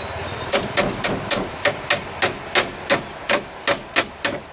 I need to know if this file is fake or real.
real